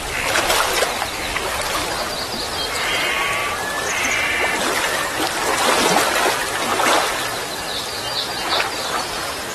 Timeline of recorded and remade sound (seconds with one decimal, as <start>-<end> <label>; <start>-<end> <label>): 0.0-9.5 recorded